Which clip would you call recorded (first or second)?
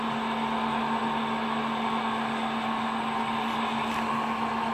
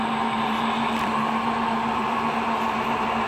first